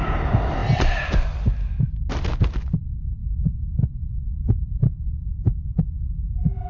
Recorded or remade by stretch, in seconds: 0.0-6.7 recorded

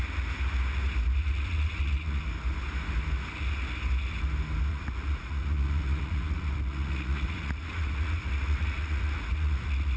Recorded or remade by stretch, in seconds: 0.0-1.2 recorded; 1.2-2.2 remade; 2.2-4.7 recorded; 4.7-10.0 remade

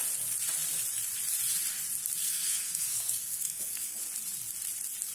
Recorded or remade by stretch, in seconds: 0.0-2.2 recorded; 2.2-4.0 remade; 4.0-5.1 recorded

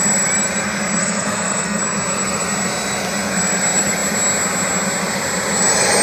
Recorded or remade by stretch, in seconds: 0.0-1.0 recorded; 1.0-1.8 remade; 1.8-6.0 recorded